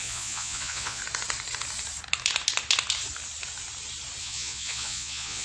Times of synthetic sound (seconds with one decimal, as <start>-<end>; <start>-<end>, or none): 0.0-1.0; 4.2-5.4